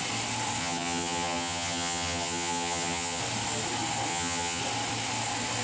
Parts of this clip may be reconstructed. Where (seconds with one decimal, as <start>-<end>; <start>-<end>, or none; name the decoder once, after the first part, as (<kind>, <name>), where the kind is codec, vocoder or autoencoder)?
0.6-3.2 (vocoder, HiFi-GAN); 4.1-4.6